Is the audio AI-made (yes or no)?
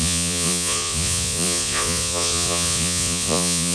yes